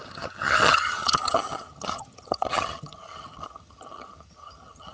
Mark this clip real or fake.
fake